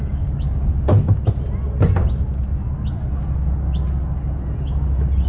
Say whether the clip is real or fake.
real